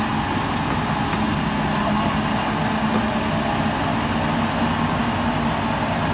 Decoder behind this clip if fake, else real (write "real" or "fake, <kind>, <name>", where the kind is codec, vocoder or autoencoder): real